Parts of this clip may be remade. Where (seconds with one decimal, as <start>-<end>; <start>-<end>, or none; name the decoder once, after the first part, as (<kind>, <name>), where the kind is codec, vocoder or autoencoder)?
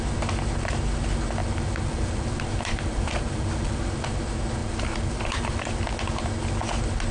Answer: 1.4-3.9 (vocoder, BigVGAN v2); 4.6-5.7